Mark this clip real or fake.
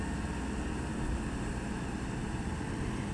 real